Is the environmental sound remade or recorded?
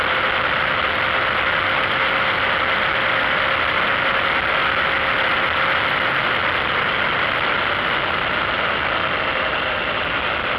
recorded